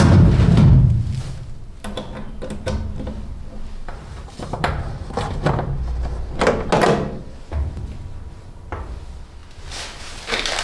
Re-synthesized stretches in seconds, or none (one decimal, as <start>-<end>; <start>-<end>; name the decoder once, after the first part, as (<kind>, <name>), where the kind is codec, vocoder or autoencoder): 3.8-5.8 (vocoder, BigVGAN v2)

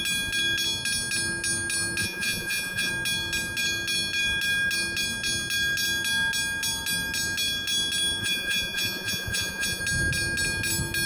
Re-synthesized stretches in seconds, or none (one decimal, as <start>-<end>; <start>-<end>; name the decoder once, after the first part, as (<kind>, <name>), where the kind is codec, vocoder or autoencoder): 2.0-2.9 (vocoder, Vocos); 8.2-9.8

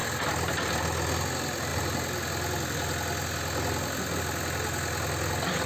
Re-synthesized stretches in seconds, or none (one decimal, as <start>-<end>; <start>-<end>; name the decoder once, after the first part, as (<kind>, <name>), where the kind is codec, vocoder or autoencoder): none

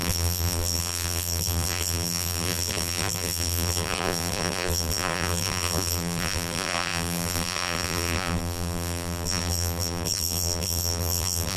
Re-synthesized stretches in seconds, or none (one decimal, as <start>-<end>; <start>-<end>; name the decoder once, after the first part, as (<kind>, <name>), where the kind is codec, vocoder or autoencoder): 0.0-11.6 (vocoder, BigVGAN v2)